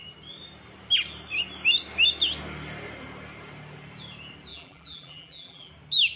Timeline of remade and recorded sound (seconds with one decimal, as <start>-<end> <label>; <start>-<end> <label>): 0.0-4.5 recorded; 4.5-5.7 remade; 5.7-6.2 recorded